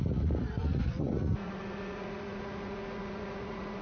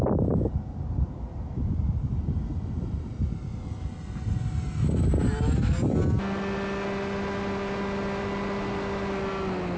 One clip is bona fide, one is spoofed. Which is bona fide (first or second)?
second